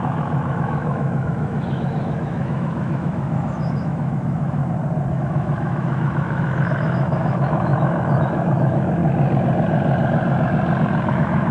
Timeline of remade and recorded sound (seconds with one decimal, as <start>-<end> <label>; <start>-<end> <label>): 0.0-4.6 remade; 4.6-5.1 recorded; 5.1-9.0 remade; 9.0-11.1 recorded; 11.1-11.5 remade